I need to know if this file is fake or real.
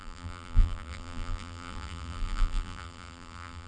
fake